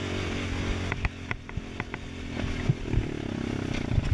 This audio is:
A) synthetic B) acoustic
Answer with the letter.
B